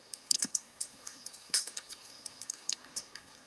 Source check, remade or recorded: remade